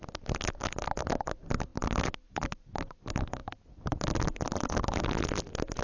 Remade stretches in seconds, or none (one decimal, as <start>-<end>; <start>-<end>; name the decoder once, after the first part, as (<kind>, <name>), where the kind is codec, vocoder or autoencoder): none